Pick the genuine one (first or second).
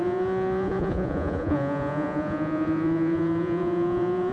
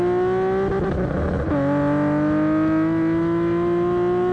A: second